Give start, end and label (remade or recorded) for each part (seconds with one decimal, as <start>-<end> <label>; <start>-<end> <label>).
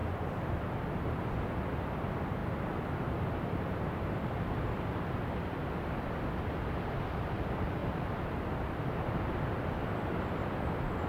0.0-1.5 remade; 1.5-7.8 recorded; 7.8-9.4 remade; 9.4-9.8 recorded; 9.8-10.4 remade; 10.4-11.1 recorded